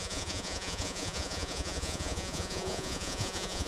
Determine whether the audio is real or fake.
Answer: fake